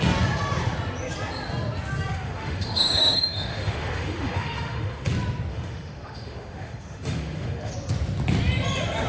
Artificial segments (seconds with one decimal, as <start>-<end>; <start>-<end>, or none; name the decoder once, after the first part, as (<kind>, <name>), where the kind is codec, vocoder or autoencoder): 2.1-5.1 (autoencoder, DAC-VAE); 5.5-7.7